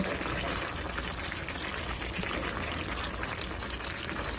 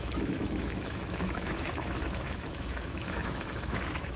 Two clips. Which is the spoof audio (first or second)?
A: second